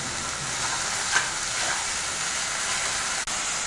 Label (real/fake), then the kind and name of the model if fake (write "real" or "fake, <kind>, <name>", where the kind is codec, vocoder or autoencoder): real